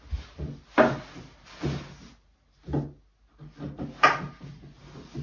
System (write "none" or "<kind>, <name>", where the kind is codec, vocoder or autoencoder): none